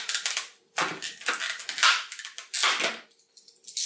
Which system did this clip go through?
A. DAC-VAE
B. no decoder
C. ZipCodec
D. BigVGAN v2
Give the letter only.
B